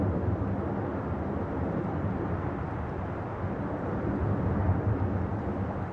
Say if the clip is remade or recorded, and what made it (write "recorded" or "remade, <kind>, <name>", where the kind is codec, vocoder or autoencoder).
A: recorded